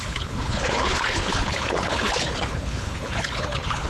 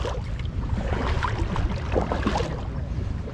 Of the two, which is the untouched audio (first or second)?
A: second